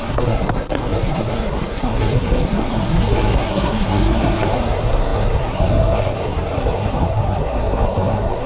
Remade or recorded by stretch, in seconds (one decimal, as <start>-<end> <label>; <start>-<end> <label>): 0.0-8.5 remade